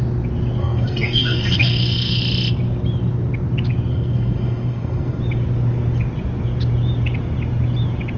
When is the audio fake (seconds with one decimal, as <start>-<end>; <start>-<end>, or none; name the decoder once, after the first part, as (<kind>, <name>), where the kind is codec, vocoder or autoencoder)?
0.6-2.2 (codec, SNAC); 3.9-5.2